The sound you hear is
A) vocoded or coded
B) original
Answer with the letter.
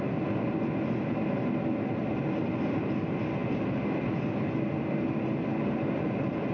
B